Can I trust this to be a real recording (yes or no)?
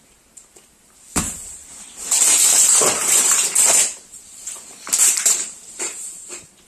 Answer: no